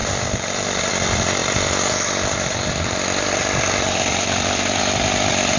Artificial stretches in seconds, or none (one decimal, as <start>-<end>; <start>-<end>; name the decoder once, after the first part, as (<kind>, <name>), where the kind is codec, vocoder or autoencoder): 0.0-0.9 (vocoder, BigVGAN v2); 1.4-4.8